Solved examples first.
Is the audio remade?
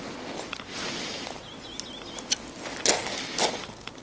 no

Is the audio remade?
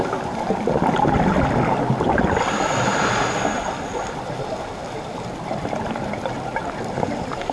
no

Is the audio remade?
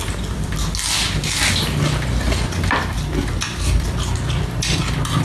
no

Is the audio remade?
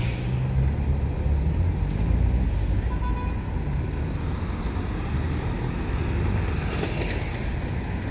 no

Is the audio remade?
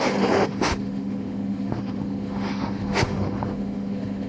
yes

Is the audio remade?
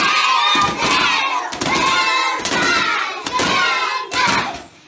no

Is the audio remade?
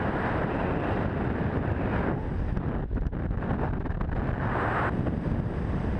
no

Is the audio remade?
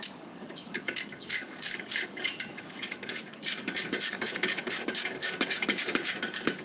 yes